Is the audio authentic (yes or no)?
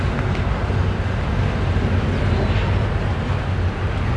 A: yes